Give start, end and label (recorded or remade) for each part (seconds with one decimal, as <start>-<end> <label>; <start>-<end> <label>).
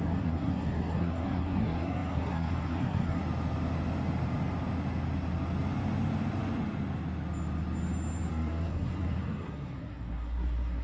0.0-3.2 remade; 3.2-8.3 recorded; 8.3-10.8 remade